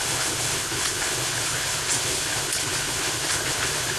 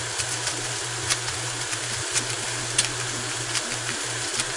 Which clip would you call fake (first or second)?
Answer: first